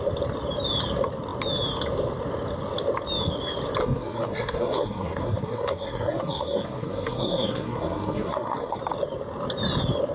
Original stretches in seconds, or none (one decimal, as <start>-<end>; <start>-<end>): 0.0-3.8; 8.8-10.1